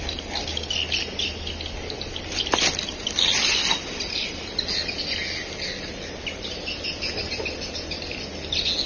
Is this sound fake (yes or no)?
no